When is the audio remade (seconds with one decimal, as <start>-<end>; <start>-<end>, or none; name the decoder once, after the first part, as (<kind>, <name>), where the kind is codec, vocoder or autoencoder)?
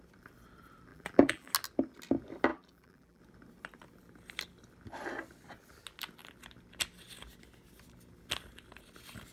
0.9-1.5 (vocoder, BigVGAN v2); 2.5-3.2